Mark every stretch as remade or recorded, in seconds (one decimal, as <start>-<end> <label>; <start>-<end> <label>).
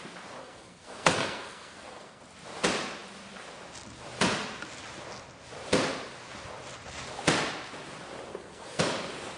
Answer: 0.0-0.4 recorded; 0.4-2.2 remade; 2.2-8.3 recorded; 8.3-8.8 remade; 8.8-9.4 recorded